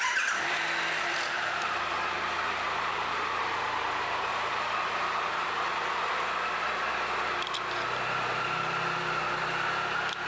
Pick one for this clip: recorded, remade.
recorded